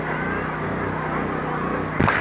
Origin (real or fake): real